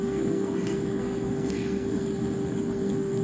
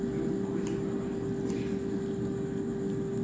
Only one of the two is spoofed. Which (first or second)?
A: first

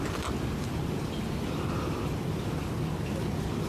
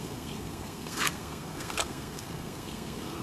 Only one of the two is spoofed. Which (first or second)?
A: second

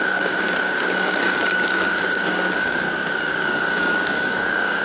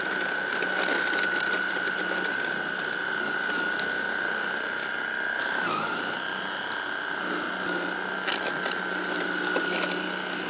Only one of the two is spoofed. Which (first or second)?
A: first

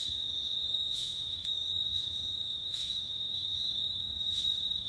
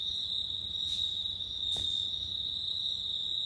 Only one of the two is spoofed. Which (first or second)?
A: first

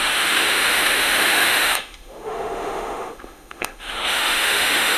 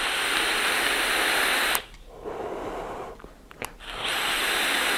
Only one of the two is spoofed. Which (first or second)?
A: first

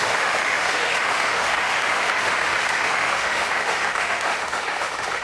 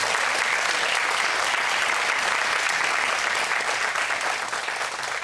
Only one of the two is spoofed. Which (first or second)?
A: first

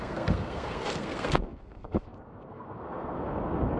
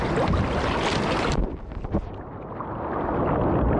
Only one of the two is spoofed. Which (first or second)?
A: first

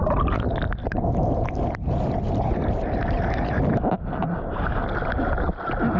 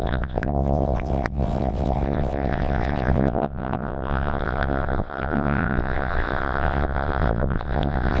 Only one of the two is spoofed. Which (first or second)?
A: second